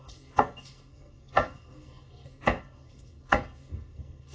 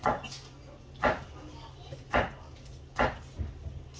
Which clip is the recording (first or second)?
second